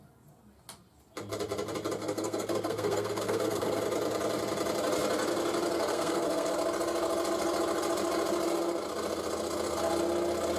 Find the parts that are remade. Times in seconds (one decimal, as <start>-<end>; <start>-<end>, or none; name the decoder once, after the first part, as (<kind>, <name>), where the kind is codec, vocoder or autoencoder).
2.0-3.8 (codec, SNAC); 5.9-6.5